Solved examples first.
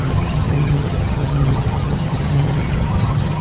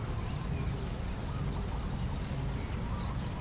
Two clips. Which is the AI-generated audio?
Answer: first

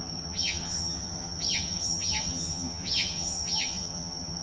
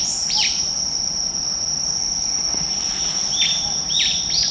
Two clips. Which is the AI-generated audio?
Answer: first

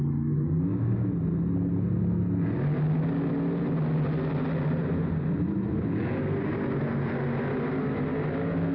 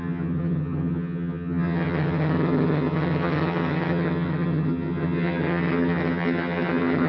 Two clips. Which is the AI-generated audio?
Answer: second